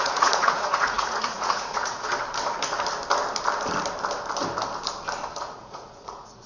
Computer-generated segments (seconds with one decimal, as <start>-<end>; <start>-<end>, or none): 0.0-2.1; 5.4-6.5